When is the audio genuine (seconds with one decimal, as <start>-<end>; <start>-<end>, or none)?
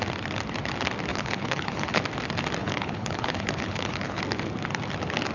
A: 0.0-1.1; 2.0-2.6; 4.2-5.3